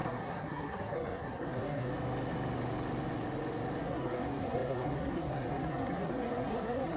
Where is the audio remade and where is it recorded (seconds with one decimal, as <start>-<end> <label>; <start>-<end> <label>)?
0.0-1.9 remade; 1.9-3.8 recorded; 3.8-7.0 remade